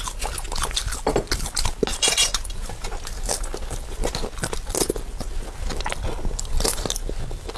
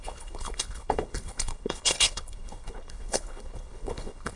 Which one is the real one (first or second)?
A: first